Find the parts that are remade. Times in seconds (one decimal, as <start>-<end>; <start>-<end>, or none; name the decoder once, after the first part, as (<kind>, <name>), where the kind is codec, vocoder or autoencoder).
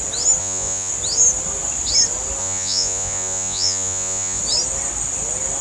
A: 0.4-0.9 (vocoder, Vocos); 2.4-4.4